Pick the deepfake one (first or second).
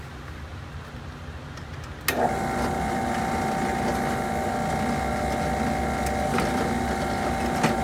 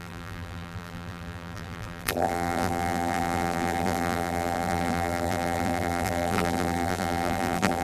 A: second